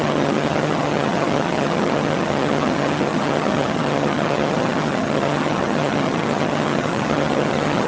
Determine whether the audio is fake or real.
fake